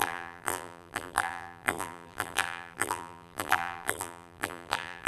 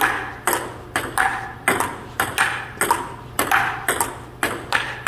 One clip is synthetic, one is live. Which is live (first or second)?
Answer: second